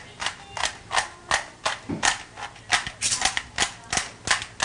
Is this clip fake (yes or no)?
no